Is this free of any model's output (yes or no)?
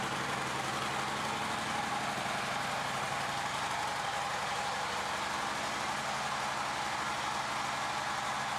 yes